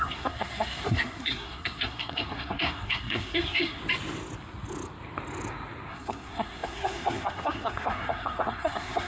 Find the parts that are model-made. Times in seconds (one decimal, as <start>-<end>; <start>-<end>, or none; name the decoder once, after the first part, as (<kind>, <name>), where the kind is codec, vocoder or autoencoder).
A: 0.0-3.8 (codec, SNAC); 5.9-9.1